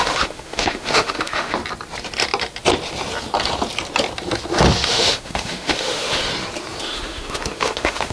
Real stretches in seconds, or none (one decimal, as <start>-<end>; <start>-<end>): 1.6-4.9; 6.2-6.8